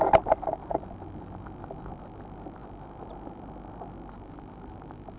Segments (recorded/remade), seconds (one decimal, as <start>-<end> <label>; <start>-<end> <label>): 0.0-5.2 recorded